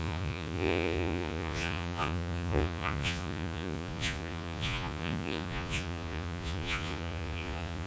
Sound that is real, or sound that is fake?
fake